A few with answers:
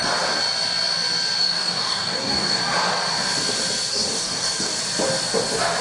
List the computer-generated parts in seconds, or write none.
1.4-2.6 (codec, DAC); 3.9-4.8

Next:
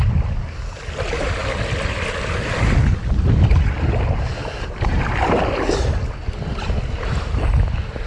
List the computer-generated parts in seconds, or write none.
4.4-5.0 (vocoder, BigVGAN v2)

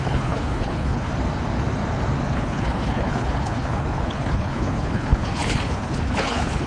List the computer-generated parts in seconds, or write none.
0.0-1.1 (codec, HILCodec); 2.3-6.7

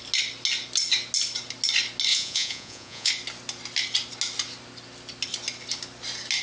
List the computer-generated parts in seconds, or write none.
2.1-3.1 (vocoder, Vocos)

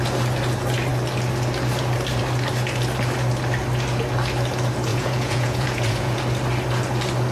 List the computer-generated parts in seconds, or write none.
4.9-6.2 (vocoder, Vocos)

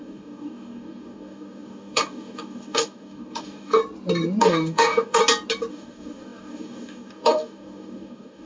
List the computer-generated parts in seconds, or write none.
0.0-3.8 (codec, DAC); 4.4-5.2; 5.7-8.5

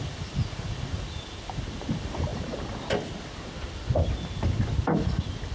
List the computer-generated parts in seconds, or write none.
none